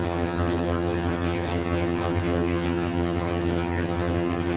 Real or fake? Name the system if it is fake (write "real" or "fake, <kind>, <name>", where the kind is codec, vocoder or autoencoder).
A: fake, vocoder, HiFi-GAN